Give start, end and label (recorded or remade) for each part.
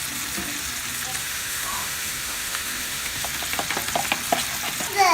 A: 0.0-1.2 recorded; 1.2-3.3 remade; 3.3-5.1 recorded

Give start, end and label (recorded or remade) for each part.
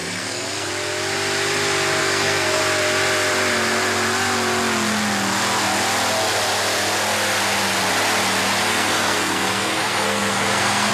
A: 0.0-0.7 remade; 0.7-2.0 recorded; 2.0-2.6 remade; 2.6-8.7 recorded; 8.7-10.9 remade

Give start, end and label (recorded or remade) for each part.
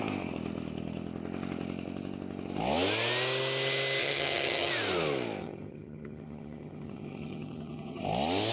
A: 0.0-4.0 recorded; 4.0-4.7 remade; 4.7-5.4 recorded; 5.4-8.0 remade; 8.0-8.5 recorded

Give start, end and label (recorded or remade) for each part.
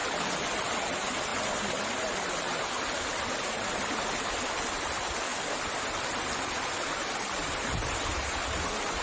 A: 0.0-9.0 recorded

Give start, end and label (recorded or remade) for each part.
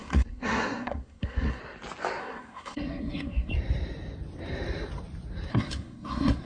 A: 0.0-1.6 remade; 1.6-2.2 recorded; 2.2-3.5 remade; 3.5-5.5 recorded; 5.5-6.5 remade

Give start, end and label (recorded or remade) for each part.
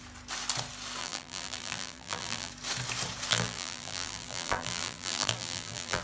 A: 0.0-1.0 recorded; 1.0-2.5 remade; 2.5-3.3 recorded; 3.3-6.0 remade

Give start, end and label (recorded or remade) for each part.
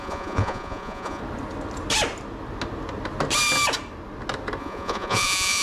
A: 0.0-1.2 remade; 1.2-4.6 recorded; 4.6-5.6 remade